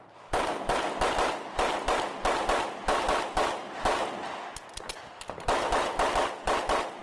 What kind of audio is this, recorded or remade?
recorded